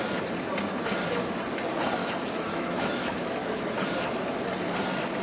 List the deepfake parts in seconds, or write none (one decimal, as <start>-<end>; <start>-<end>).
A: 2.0-3.8